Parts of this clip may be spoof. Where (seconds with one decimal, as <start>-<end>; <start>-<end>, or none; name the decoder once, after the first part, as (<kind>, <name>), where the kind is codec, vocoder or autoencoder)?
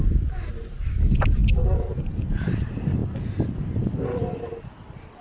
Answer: none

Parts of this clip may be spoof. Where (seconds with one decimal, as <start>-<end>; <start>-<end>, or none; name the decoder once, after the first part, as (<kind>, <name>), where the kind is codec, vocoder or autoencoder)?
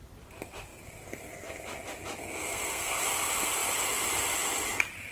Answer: 2.2-3.0 (codec, SNAC)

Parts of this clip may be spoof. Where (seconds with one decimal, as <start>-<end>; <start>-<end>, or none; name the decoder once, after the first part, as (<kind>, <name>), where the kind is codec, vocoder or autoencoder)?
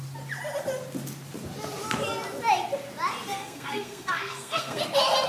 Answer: 3.3-4.8 (codec, SNAC)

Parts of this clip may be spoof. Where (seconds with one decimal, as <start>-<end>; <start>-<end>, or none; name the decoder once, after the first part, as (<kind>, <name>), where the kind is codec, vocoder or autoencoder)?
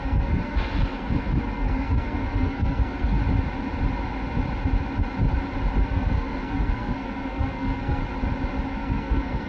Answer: 0.0-3.2 (codec, SNAC); 5.8-8.0; 8.7-9.5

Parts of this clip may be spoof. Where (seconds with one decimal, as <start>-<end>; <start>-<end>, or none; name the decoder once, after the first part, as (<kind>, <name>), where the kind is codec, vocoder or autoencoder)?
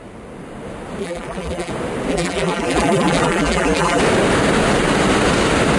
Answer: 1.0-1.7 (vocoder, BigVGAN v2); 2.1-4.0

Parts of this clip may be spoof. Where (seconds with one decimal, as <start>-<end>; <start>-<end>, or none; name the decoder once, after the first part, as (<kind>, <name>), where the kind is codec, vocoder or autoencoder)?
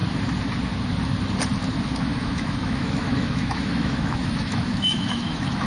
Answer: 2.1-5.7 (autoencoder, DAC-VAE)